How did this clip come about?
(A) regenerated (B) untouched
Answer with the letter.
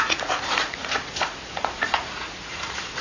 A